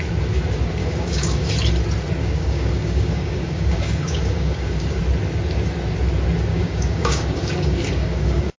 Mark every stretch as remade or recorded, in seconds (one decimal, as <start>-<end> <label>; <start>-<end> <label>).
0.0-0.8 recorded; 0.8-1.5 remade; 1.5-2.2 recorded; 2.2-5.0 remade; 5.0-6.5 recorded; 6.5-8.6 remade